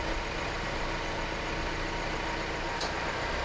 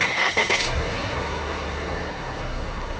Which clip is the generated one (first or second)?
second